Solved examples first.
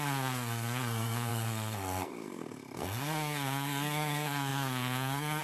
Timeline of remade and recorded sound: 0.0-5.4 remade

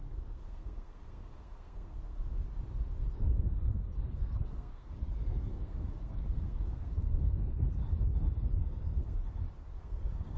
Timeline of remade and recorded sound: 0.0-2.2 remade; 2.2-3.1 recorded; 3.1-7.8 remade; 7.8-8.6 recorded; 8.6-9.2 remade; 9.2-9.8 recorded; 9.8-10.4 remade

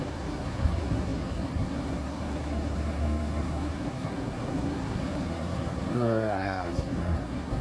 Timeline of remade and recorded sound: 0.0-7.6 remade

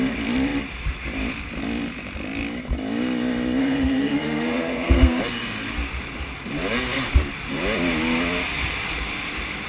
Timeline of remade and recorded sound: 0.0-3.6 recorded; 3.6-5.2 remade; 5.2-9.7 recorded

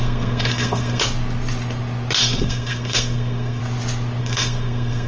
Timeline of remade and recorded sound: 0.0-1.0 remade; 1.0-2.2 recorded; 2.2-3.6 remade; 3.6-4.2 recorded; 4.2-5.1 remade

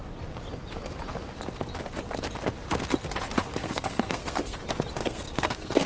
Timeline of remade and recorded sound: 0.0-3.6 recorded; 3.6-4.6 remade; 4.6-5.0 recorded; 5.0-5.9 remade